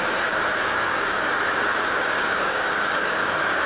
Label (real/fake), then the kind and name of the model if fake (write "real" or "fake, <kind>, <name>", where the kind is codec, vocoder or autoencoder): fake, codec, DAC